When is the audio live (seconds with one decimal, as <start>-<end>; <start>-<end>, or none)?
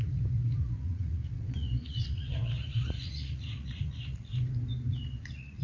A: 4.3-4.9